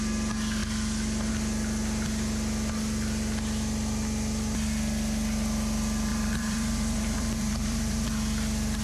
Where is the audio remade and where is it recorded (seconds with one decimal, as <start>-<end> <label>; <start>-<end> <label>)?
0.0-6.1 recorded; 6.1-8.1 remade; 8.1-8.8 recorded